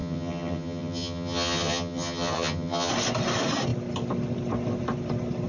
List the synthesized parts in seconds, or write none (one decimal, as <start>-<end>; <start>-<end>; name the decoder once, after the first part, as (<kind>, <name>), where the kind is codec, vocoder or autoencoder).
0.0-2.9 (vocoder, HiFi-GAN)